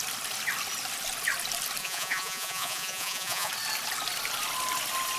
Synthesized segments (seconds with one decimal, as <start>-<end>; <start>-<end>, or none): 1.8-3.5

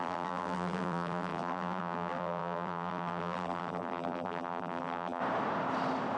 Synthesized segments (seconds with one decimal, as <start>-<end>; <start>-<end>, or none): 0.0-5.2

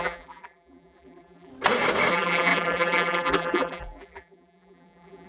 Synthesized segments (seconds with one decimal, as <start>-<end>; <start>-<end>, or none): 0.0-1.5; 2.1-5.3

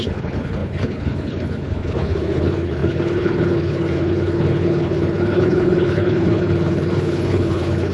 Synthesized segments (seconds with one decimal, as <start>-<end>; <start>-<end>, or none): 0.0-7.9

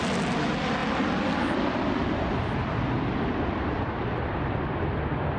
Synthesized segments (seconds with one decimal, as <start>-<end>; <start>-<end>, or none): none